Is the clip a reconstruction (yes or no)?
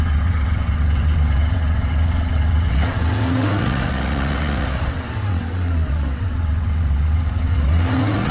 yes